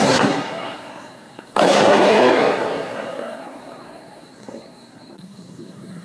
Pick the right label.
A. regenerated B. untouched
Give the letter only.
A